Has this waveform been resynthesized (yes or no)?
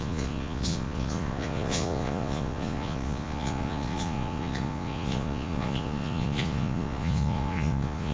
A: yes